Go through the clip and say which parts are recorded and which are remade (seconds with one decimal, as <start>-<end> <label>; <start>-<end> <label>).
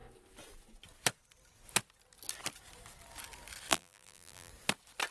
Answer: 0.0-3.7 recorded; 3.7-4.5 remade; 4.5-5.1 recorded